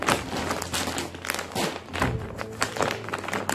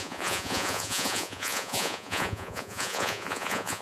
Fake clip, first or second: second